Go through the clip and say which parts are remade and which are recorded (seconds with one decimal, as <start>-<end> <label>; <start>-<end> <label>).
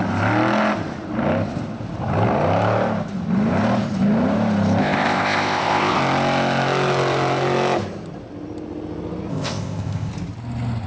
0.0-4.8 recorded; 4.8-6.0 remade; 6.0-9.3 recorded; 9.3-10.1 remade; 10.1-10.9 recorded